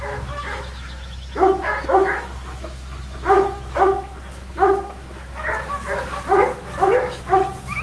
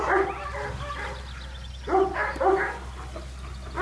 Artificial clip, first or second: first